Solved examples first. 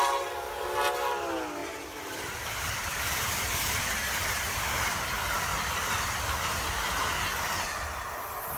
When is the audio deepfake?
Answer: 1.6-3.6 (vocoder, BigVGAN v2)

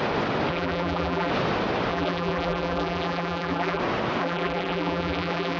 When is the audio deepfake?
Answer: 0.5-1.3 (vocoder, BigVGAN v2); 1.9-3.8; 4.2-5.6